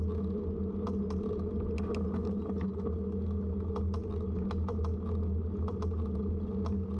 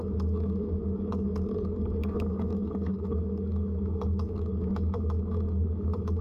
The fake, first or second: second